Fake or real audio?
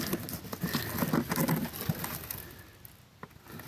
real